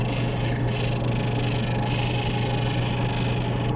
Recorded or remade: recorded